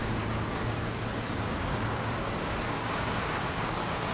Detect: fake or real fake